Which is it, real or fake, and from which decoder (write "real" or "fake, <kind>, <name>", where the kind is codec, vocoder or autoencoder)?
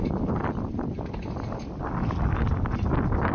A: real